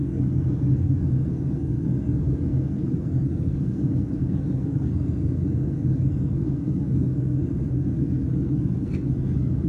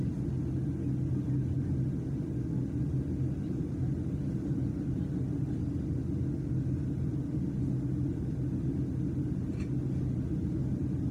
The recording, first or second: second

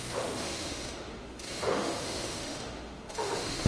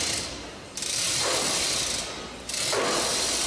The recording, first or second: second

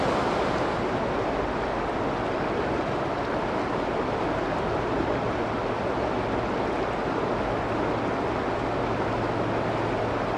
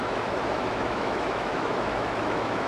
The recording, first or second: first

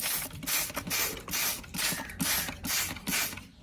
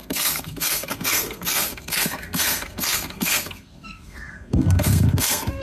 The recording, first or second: first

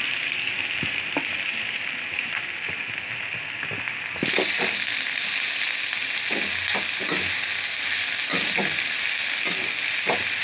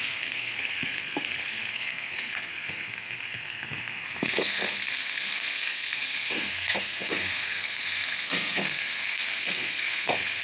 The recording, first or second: first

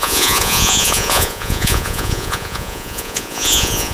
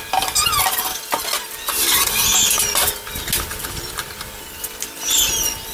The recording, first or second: second